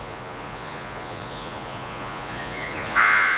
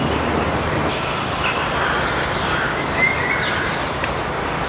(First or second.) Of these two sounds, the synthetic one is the first